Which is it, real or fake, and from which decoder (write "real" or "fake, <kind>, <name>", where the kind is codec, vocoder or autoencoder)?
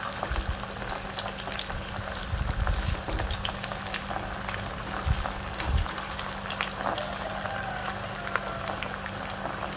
real